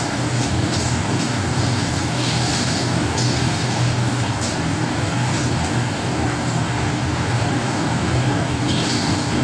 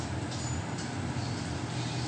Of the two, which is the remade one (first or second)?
first